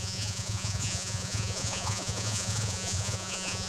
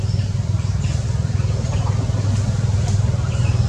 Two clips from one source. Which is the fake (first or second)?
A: first